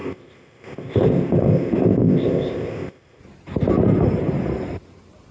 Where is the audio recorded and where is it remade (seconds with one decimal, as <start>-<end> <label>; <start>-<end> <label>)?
0.0-3.2 remade; 3.2-5.3 recorded